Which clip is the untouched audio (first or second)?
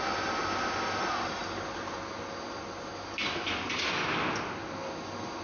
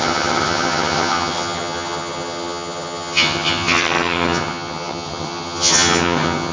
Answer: first